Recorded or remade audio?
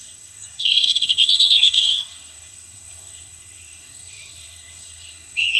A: remade